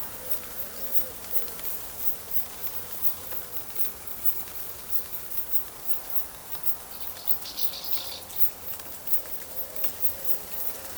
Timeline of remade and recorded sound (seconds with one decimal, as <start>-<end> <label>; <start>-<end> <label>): 0.0-6.4 remade; 6.4-8.5 recorded; 8.5-11.0 remade